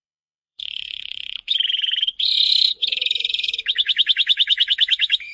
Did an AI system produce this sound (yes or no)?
yes